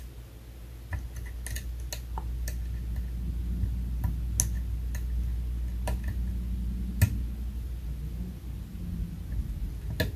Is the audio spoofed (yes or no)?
no